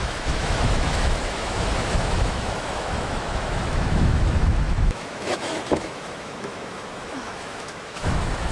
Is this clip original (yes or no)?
no